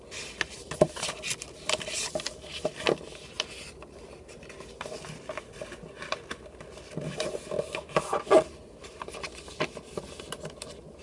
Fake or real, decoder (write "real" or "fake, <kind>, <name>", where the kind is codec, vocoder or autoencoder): real